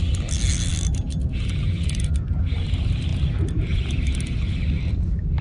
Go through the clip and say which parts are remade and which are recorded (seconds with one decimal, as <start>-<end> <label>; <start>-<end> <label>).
0.0-5.4 recorded